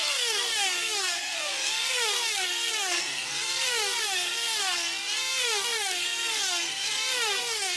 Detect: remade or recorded remade